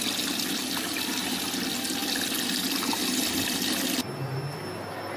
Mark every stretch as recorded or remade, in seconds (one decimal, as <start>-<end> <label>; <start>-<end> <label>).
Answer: 0.0-5.2 recorded

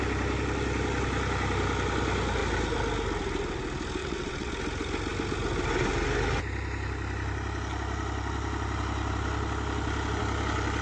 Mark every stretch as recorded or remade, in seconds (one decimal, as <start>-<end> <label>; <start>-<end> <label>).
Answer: 0.0-4.0 recorded; 4.0-4.5 remade; 4.5-10.8 recorded

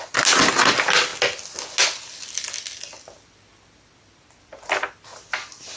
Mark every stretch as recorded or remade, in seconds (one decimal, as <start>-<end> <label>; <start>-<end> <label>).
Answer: 0.0-5.8 recorded

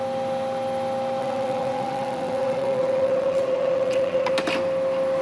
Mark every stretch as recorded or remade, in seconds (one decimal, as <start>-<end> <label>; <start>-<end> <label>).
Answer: 0.0-1.2 recorded; 1.2-4.3 remade; 4.3-5.2 recorded

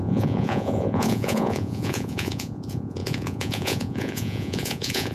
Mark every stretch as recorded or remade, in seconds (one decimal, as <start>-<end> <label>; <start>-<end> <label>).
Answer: 0.0-5.1 remade

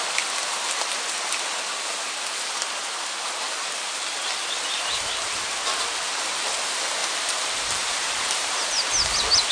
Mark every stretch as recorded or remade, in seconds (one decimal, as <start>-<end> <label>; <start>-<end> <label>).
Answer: 0.0-7.0 recorded; 7.0-8.7 remade; 8.7-9.5 recorded